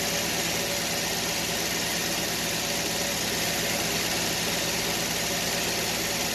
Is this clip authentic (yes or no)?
yes